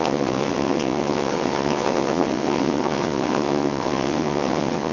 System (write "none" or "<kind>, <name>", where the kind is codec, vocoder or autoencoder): vocoder, WaveNeXt